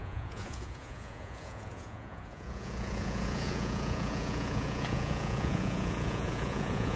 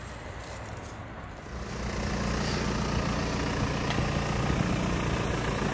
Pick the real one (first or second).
second